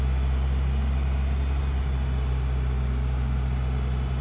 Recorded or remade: recorded